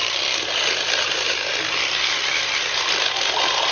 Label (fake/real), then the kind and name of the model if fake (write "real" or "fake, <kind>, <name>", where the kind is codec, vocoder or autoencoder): real